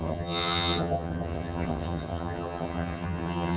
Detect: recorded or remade remade